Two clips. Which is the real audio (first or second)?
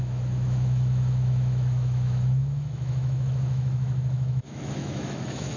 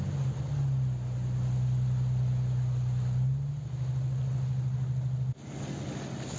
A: second